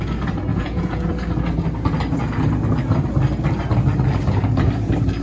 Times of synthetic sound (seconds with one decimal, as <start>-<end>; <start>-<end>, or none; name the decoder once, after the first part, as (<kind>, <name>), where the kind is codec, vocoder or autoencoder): 0.5-1.1 (vocoder, Vocos)